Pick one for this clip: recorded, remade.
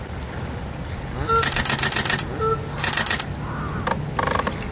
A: recorded